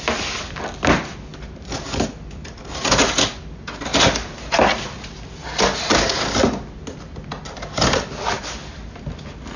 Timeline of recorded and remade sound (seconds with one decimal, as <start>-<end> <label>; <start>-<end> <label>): 0.0-9.6 recorded